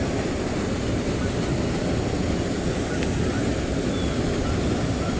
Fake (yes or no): no